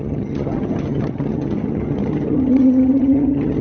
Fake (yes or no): yes